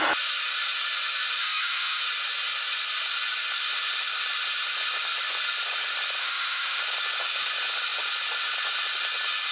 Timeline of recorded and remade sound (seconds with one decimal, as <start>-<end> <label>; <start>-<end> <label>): 0.0-1.4 recorded; 1.4-2.0 remade; 2.0-6.2 recorded; 6.2-6.8 remade; 6.8-9.5 recorded